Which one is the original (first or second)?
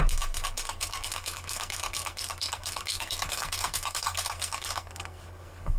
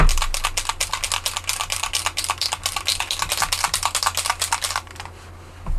second